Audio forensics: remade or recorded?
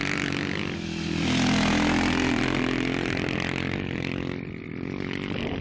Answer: recorded